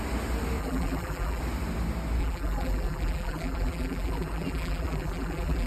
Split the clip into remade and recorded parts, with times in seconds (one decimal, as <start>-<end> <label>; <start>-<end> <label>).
0.0-0.6 recorded; 0.6-1.4 remade; 1.4-2.2 recorded; 2.2-5.7 remade